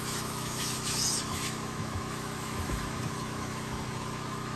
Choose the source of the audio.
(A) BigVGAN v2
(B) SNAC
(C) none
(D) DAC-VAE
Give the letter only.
D